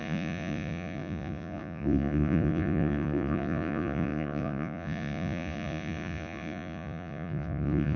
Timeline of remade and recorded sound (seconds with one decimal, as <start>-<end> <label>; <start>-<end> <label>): 0.0-8.0 remade